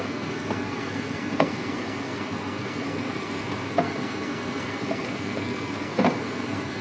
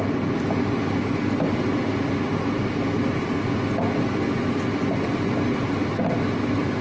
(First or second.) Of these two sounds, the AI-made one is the first